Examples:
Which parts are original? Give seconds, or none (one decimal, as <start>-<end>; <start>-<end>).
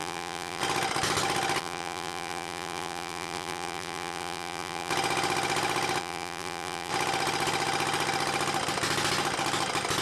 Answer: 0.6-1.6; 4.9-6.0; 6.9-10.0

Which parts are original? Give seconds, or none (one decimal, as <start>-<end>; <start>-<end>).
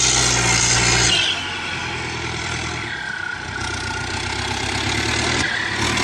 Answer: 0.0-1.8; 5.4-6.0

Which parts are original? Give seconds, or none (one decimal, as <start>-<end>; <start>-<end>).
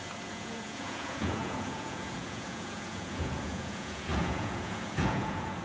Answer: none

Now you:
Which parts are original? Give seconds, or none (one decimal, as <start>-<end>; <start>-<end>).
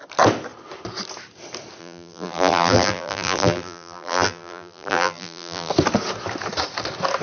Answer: 0.0-1.8; 5.7-7.2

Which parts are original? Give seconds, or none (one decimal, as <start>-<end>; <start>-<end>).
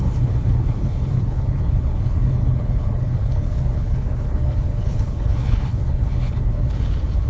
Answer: none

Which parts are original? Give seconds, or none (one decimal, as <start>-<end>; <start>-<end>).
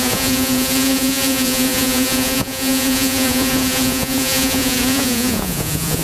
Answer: none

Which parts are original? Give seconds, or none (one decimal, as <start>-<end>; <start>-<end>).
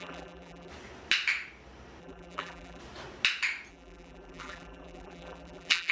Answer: 0.7-2.0; 2.8-3.7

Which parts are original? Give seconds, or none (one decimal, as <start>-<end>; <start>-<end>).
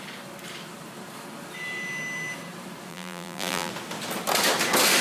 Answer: 0.0-2.9; 3.7-5.0